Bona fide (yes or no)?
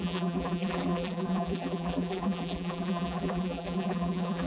no